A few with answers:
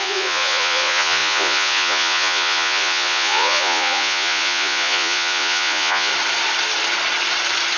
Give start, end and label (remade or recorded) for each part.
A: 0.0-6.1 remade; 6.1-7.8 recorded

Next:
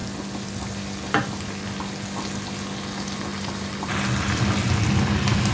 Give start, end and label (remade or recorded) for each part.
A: 0.0-3.3 recorded; 3.3-3.9 remade; 3.9-5.5 recorded

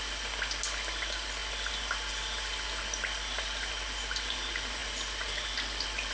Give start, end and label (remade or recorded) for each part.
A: 0.0-6.1 recorded

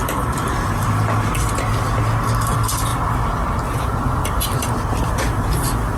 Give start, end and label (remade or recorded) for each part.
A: 0.0-6.0 recorded

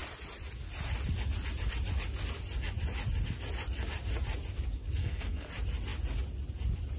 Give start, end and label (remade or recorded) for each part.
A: 0.0-5.0 recorded; 5.0-5.5 remade; 5.5-7.0 recorded

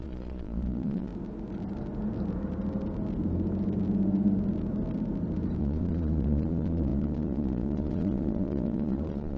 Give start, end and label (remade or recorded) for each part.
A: 0.0-1.1 remade; 1.1-5.6 recorded; 5.6-9.4 remade